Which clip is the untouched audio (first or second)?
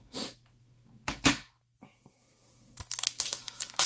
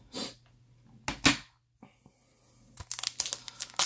second